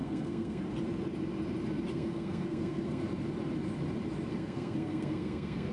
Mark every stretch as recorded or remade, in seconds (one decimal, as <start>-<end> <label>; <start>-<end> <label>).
0.0-0.6 remade; 0.6-1.9 recorded; 1.9-3.0 remade; 3.0-4.3 recorded; 4.3-5.7 remade